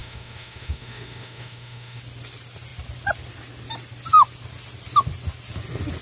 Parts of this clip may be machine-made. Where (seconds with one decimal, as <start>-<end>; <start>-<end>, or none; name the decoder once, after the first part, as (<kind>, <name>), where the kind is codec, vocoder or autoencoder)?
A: 0.0-2.0 (autoencoder, DAC-VAE)